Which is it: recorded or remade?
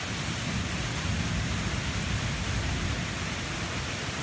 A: recorded